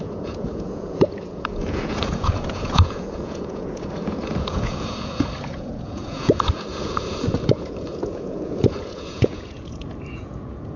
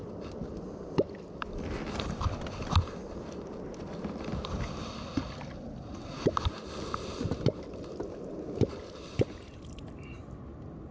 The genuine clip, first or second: second